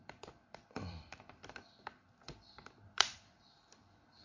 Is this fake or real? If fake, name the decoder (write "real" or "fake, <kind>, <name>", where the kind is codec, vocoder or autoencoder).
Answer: fake, vocoder, BigVGAN v2